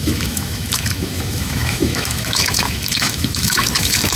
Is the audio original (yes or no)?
no